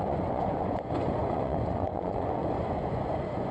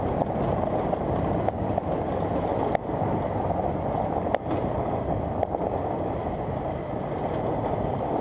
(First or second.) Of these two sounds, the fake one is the first